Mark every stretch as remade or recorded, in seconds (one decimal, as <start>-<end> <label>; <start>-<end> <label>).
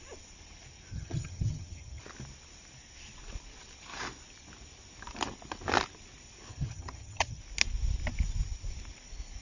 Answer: 0.0-0.9 recorded; 0.9-2.0 remade; 2.0-6.5 recorded; 6.5-7.4 remade; 7.4-9.4 recorded